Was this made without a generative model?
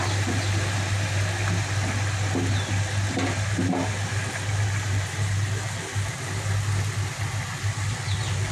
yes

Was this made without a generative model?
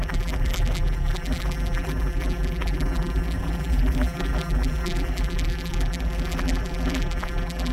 no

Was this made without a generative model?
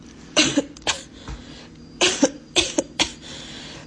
no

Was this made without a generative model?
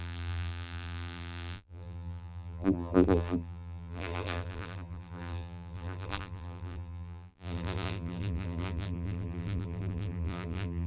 no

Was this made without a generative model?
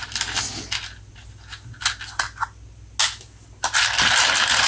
yes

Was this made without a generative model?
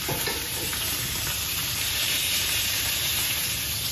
no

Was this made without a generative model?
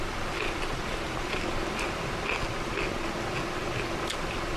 yes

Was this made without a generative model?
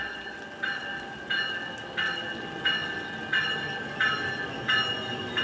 yes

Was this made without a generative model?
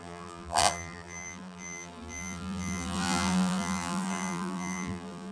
no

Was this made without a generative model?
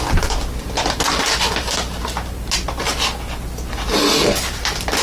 yes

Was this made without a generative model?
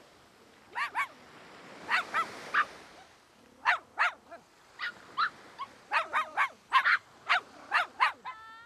yes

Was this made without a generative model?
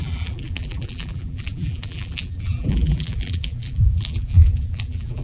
no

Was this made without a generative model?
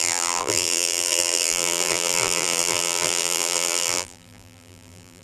no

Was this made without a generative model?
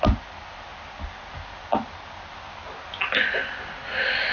yes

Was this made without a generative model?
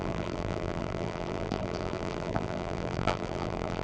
no